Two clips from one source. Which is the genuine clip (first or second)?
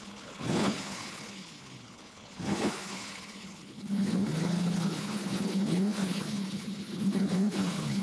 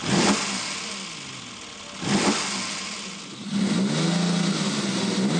second